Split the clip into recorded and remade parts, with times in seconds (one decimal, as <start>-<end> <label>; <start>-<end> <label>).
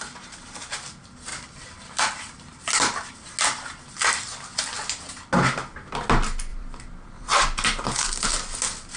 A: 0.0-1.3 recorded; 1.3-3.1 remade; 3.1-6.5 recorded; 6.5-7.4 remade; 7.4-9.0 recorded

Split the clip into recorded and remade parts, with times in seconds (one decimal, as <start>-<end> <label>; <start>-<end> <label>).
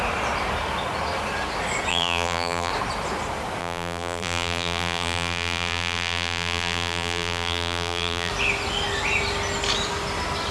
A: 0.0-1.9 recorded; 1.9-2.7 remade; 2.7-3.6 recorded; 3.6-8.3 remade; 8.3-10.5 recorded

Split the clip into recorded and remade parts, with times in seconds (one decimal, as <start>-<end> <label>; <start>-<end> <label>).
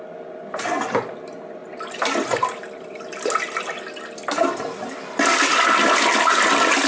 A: 0.0-6.9 recorded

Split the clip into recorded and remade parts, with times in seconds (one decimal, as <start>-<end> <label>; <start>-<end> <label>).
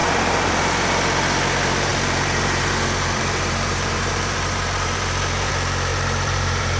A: 0.0-0.6 remade; 0.6-1.9 recorded; 1.9-5.5 remade; 5.5-5.9 recorded; 5.9-6.8 remade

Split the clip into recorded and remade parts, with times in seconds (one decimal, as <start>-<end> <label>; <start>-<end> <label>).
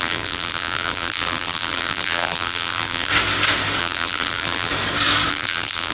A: 0.0-3.1 remade; 3.1-3.8 recorded; 3.8-4.7 remade; 4.7-5.3 recorded; 5.3-5.9 remade